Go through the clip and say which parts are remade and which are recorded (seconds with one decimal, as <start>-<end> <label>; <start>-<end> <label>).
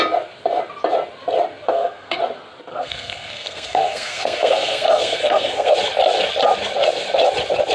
0.0-1.7 recorded; 1.7-2.2 remade; 2.2-2.7 recorded; 2.7-5.7 remade; 5.7-7.7 recorded